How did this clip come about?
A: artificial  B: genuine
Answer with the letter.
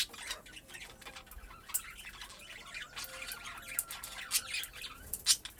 B